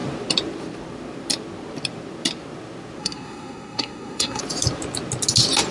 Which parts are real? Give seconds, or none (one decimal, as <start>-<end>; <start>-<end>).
0.0-3.0; 4.4-5.7